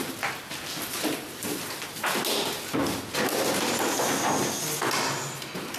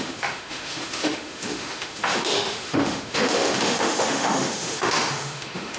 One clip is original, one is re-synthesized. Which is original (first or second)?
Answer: first